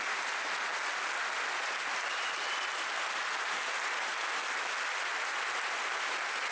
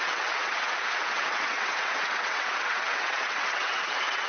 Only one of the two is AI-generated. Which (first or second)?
second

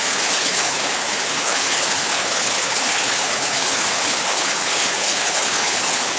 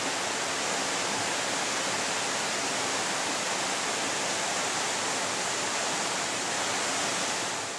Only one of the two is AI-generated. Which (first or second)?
first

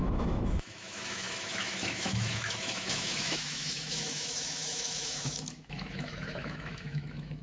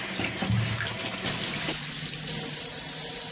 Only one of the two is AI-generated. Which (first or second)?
first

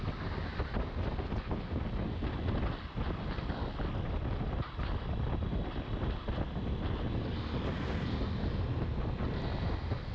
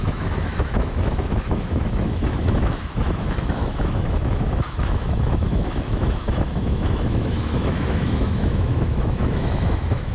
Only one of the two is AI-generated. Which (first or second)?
second